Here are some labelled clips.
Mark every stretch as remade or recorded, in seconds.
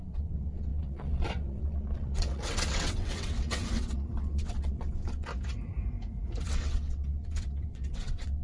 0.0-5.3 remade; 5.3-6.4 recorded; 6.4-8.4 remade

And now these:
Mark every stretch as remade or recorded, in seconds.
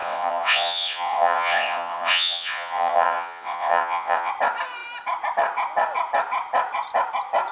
0.0-4.3 remade; 4.3-7.5 recorded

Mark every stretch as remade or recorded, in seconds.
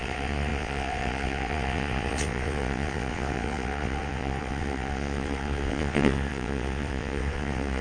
0.0-7.8 remade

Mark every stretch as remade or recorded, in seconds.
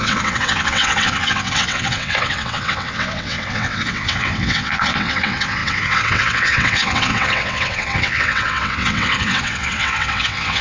0.0-10.6 remade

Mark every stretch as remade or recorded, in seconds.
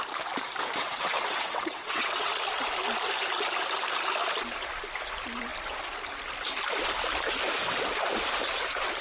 0.0-0.8 recorded; 0.8-2.3 remade; 2.3-9.0 recorded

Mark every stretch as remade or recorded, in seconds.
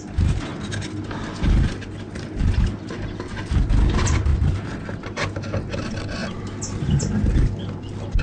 0.0-8.2 recorded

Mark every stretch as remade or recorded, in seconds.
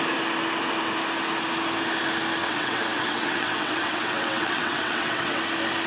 0.0-2.4 recorded; 2.4-5.4 remade; 5.4-5.9 recorded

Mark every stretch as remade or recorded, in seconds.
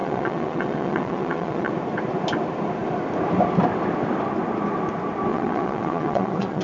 0.0-1.7 remade; 1.7-5.3 recorded; 5.3-6.6 remade